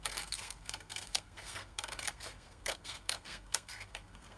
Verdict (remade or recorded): remade